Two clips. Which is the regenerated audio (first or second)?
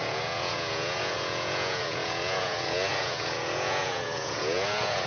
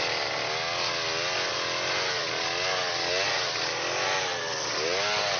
first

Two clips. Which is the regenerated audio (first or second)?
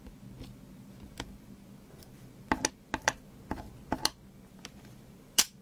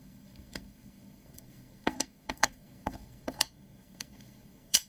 second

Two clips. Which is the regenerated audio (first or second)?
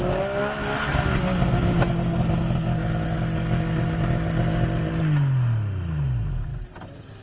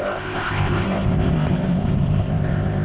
second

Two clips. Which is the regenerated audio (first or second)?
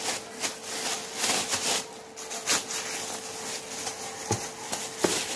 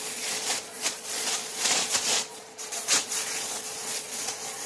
second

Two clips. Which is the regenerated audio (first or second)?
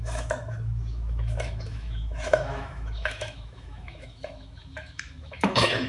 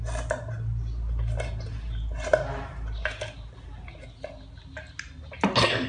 first